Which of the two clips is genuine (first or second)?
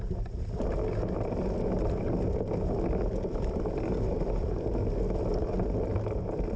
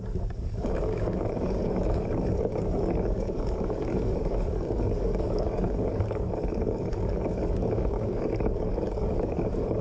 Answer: first